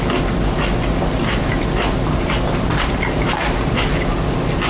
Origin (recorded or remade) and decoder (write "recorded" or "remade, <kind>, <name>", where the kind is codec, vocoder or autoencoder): recorded